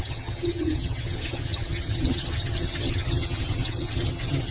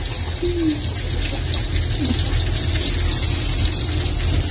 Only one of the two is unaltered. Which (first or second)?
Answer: second